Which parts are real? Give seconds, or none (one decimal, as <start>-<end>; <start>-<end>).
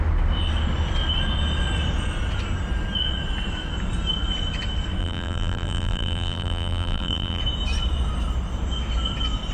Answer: 0.0-5.0; 7.4-9.5